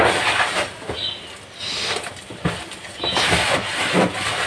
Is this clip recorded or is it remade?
recorded